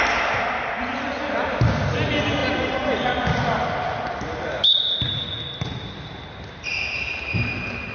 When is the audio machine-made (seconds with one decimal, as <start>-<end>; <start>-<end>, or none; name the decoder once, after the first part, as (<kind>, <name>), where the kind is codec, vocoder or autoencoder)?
none